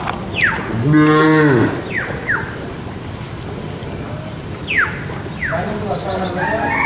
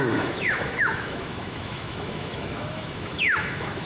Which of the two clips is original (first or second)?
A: first